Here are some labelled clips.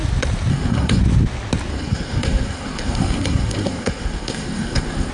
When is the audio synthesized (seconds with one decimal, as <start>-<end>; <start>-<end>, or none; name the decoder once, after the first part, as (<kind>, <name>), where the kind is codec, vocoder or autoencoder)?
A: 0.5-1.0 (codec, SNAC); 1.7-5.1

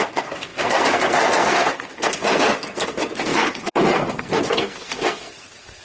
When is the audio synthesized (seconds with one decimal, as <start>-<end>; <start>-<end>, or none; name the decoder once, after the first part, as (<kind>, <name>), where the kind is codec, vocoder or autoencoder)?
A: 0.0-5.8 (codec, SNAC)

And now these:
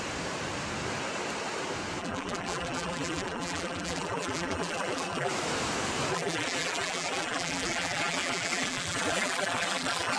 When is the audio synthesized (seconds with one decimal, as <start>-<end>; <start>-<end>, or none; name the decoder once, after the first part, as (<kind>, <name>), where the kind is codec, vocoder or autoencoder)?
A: 2.0-5.3 (vocoder, BigVGAN v2); 6.1-10.2

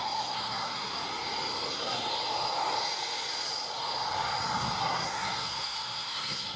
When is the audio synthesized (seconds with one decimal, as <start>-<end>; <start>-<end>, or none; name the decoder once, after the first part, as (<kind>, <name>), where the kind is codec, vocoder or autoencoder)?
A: 0.0-0.9 (codec, SNAC); 1.7-2.1; 4.8-6.6

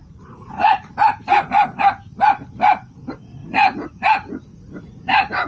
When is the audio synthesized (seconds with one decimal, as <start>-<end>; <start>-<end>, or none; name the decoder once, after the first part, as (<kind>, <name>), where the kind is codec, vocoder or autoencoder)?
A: 0.0-2.0 (vocoder, Vocos); 3.4-5.5

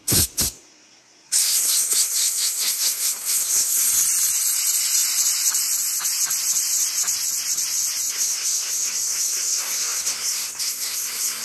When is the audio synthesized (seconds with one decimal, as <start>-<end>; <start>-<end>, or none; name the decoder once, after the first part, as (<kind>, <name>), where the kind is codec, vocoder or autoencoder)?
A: 0.0-3.9 (codec, SNAC); 8.1-11.4